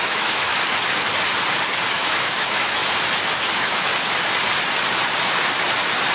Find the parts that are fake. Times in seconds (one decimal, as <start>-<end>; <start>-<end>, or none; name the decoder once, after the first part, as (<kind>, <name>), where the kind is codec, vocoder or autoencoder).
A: 0.0-0.5 (autoencoder, DAC-VAE); 1.9-2.8; 3.5-3.9

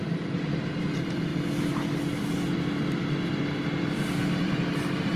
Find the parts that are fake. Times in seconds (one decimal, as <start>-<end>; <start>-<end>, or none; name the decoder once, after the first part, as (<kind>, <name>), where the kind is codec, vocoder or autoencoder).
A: 0.0-1.3 (vocoder, BigVGAN v2); 4.4-5.2